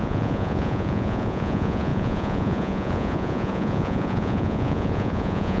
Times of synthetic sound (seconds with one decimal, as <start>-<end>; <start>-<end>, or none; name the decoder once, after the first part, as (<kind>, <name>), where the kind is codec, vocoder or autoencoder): 0.0-5.6 (vocoder, Vocos)